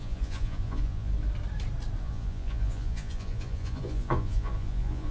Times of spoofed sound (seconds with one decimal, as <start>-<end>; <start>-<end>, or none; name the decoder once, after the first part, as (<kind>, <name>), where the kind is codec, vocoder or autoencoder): 0.0-1.1 (vocoder, Vocos); 2.0-5.1